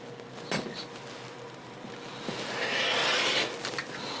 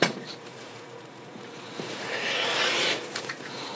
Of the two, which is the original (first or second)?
first